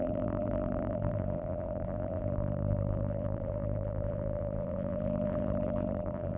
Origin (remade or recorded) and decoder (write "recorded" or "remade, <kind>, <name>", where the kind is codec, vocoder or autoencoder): remade, vocoder, BigVGAN v2